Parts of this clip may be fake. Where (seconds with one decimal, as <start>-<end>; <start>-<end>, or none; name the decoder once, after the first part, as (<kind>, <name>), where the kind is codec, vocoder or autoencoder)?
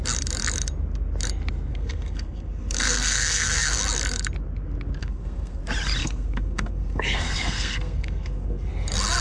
1.7-3.8 (codec, SNAC); 5.0-5.6; 6.0-8.7